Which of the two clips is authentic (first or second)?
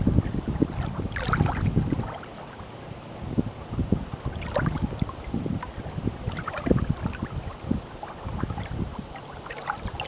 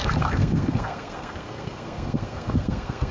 first